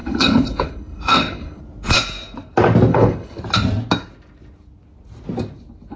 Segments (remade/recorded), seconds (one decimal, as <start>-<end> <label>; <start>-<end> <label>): 0.0-1.6 remade; 1.6-2.9 recorded; 2.9-3.4 remade; 3.4-6.0 recorded